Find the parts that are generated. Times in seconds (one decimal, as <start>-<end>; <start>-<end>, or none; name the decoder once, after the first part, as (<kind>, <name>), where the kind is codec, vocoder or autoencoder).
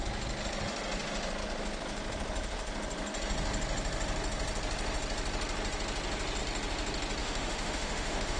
7.2-8.4 (autoencoder, DAC-VAE)